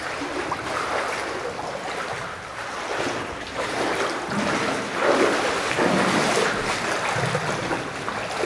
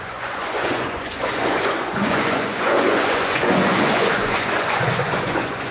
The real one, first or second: first